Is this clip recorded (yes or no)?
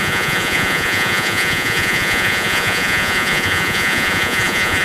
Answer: no